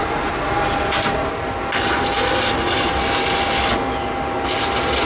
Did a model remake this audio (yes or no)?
no